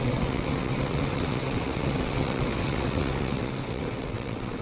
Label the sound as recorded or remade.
remade